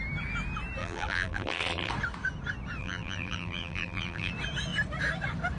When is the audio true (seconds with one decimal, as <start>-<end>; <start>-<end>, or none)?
0.0-0.8; 1.9-2.8; 4.3-5.6